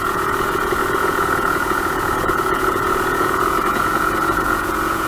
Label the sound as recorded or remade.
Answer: remade